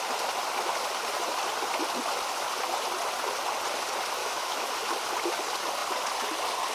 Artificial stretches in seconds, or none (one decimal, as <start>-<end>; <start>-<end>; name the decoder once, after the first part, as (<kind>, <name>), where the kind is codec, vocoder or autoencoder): 4.2-4.7 (autoencoder, DAC-VAE)